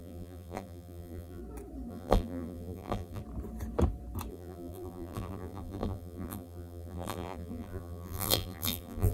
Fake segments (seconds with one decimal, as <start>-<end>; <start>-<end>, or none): 0.0-1.4; 1.9-3.2; 4.3-9.1